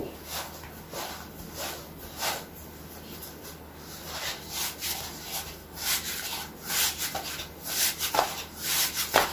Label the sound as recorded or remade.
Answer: recorded